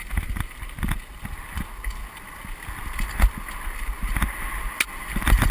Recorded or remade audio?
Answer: recorded